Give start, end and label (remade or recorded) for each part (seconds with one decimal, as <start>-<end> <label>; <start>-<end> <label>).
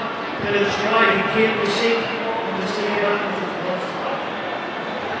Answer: 0.0-1.6 recorded; 1.6-2.2 remade; 2.2-5.2 recorded